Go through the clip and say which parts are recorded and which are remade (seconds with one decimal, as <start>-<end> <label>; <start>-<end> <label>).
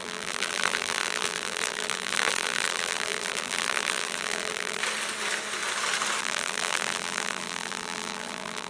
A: 0.0-4.8 remade; 4.8-6.2 recorded; 6.2-8.7 remade